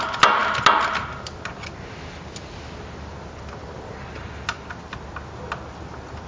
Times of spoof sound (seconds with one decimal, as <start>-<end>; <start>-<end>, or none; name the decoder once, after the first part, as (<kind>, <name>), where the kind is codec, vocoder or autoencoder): none